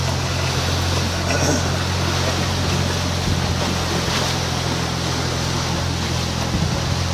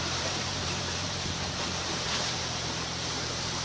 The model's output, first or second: second